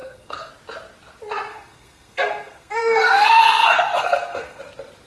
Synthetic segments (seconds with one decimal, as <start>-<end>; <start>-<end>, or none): 0.0-0.5; 1.5-4.6